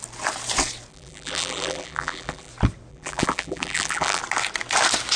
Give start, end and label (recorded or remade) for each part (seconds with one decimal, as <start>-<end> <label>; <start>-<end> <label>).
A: 0.0-0.9 recorded; 0.9-2.5 remade; 2.5-2.9 recorded; 2.9-4.2 remade; 4.2-5.2 recorded